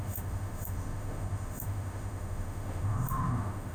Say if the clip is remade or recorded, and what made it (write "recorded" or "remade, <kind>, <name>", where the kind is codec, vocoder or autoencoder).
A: remade, autoencoder, DAC-VAE